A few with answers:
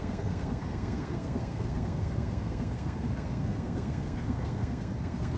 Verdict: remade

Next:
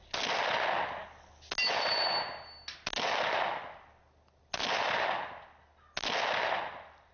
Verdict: recorded